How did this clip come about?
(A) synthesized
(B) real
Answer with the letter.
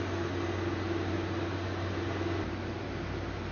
B